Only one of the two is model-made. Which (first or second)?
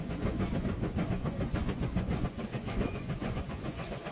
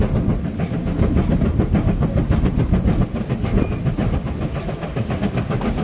first